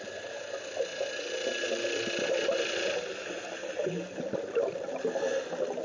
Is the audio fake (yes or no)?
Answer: no